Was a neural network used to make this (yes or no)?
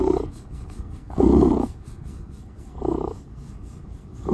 yes